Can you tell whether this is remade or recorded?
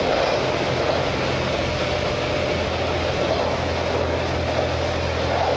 recorded